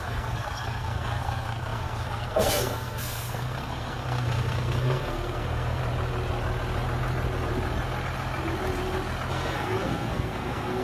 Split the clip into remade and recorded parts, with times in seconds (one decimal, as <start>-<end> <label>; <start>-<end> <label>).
0.0-5.8 remade; 5.8-9.3 recorded; 9.3-10.8 remade